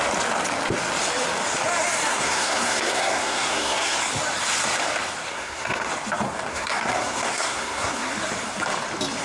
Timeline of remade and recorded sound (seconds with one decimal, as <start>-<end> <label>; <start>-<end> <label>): 0.0-2.1 recorded; 2.1-4.0 remade; 4.0-5.3 recorded; 5.3-5.9 remade; 5.9-6.5 recorded; 6.5-8.1 remade; 8.1-9.2 recorded